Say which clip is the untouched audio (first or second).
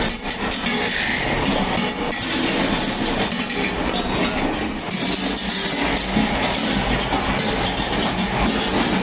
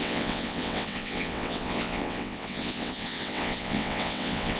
first